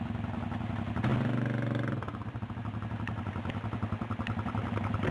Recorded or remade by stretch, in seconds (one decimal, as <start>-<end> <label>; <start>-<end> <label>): 0.0-5.1 recorded